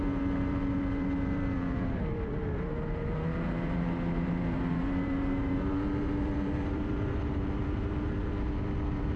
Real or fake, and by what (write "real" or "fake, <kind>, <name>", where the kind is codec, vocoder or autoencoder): fake, vocoder, BigVGAN v2